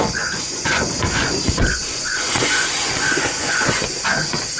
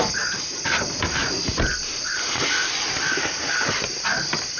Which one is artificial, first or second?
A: first